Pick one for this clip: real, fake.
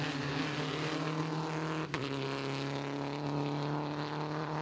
real